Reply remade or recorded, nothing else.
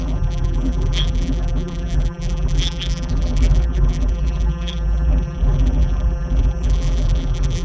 remade